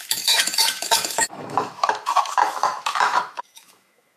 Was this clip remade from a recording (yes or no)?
yes